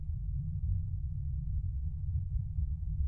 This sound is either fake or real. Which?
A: fake